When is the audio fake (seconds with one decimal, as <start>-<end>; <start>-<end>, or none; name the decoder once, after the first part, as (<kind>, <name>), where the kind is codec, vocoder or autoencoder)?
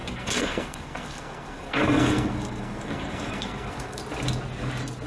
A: 0.0-4.0 (codec, SNAC)